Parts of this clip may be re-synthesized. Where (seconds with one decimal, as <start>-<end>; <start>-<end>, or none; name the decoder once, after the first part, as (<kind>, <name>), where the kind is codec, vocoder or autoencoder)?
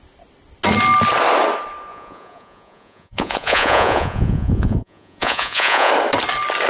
1.9-5.9 (vocoder, Vocos)